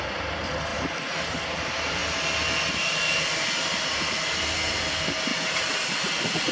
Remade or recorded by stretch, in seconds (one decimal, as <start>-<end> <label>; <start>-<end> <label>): 0.0-0.7 remade; 0.7-1.3 recorded; 1.3-2.0 remade; 2.0-2.7 recorded; 2.7-5.3 remade; 5.3-5.9 recorded; 5.9-6.5 remade